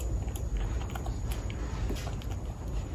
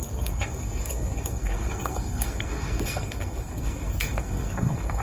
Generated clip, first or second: second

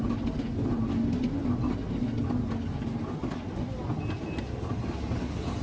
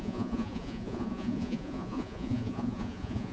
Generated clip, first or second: second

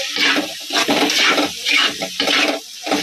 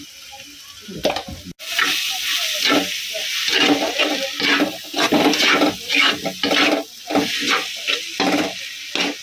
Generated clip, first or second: first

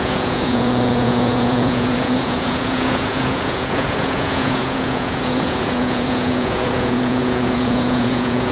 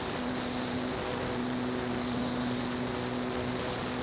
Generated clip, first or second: first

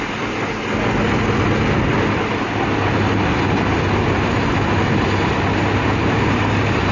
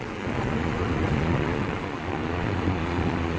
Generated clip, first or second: second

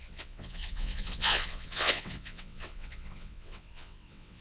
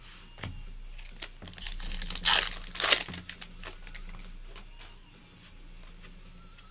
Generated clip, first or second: first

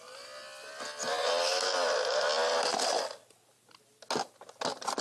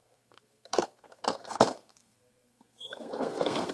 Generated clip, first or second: second